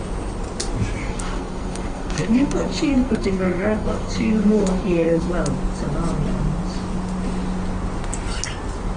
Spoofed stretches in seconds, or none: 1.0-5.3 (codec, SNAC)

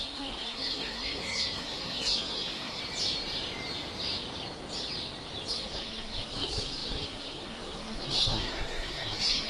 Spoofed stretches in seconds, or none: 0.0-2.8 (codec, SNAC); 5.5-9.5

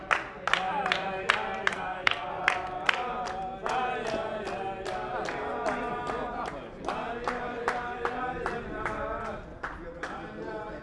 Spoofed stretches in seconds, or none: 1.7-2.3 (codec, SNAC)

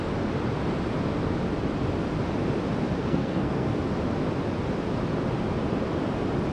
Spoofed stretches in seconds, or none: 3.0-3.7 (codec, SNAC)